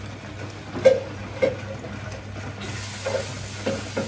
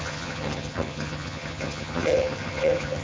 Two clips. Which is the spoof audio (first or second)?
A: second